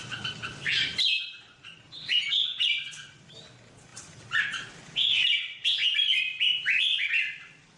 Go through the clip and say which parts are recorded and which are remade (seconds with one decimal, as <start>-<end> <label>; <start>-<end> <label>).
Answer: 0.0-7.8 remade

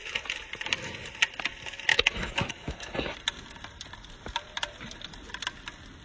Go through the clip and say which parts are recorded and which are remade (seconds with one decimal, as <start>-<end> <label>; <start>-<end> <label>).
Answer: 0.0-1.9 recorded; 1.9-2.9 remade; 2.9-6.0 recorded